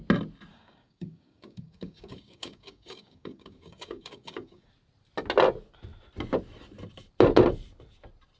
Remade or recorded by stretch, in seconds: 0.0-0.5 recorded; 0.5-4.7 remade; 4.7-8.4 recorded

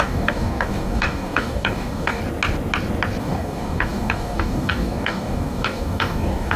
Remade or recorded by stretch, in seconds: 0.0-2.2 remade; 2.2-3.2 recorded; 3.2-6.6 remade

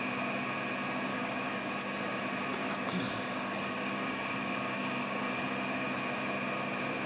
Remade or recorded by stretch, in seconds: 0.0-1.1 recorded; 1.1-1.7 remade; 1.7-2.6 recorded; 2.6-5.4 remade; 5.4-7.1 recorded

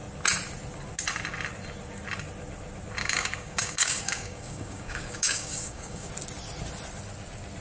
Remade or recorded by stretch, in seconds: 0.0-3.0 recorded; 3.0-6.1 remade; 6.1-7.6 recorded